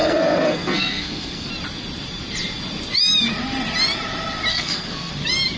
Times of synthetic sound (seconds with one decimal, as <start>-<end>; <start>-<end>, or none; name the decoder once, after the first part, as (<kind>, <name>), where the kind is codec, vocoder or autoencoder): 0.0-1.5 (codec, SNAC); 4.5-5.1